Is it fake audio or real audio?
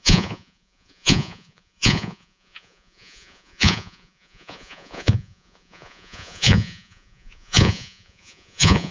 fake